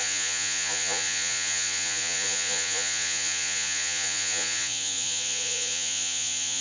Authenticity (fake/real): fake